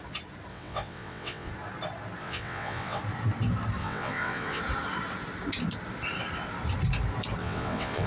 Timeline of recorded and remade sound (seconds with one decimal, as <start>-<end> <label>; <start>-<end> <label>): 0.0-0.5 recorded; 0.5-1.5 remade; 1.5-2.2 recorded; 2.2-3.0 remade; 3.0-3.8 recorded; 3.8-4.6 remade; 4.6-7.4 recorded; 7.4-8.1 remade